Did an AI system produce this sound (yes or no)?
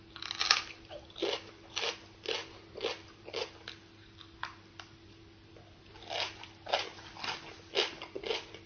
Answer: no